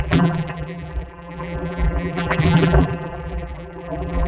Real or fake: fake